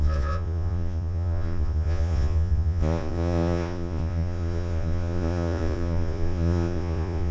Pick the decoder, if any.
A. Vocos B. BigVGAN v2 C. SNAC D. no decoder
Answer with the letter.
A